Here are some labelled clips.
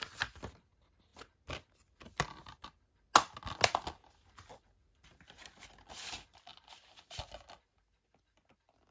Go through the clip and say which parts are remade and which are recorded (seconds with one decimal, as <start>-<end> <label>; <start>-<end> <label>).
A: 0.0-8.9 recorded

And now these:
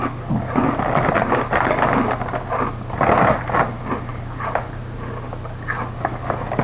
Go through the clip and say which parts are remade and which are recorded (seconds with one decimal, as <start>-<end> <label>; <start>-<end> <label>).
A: 0.0-6.6 recorded

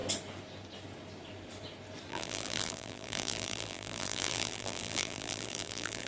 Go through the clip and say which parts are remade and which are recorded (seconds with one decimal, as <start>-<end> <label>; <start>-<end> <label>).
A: 0.0-2.1 recorded; 2.1-6.1 remade